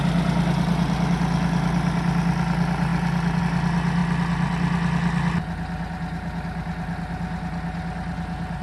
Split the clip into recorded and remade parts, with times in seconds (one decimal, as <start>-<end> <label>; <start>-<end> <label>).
0.0-8.6 recorded